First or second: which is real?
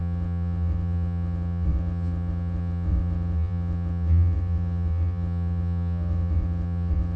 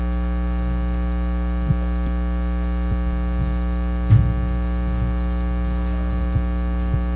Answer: second